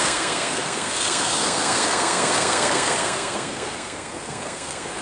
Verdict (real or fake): fake